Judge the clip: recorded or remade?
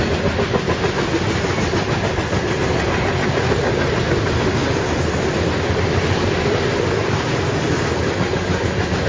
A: recorded